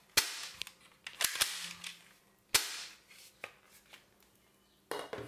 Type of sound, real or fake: real